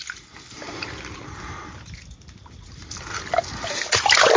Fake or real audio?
real